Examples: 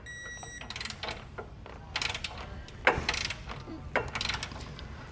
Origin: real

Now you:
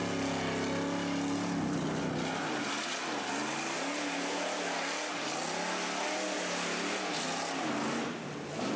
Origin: real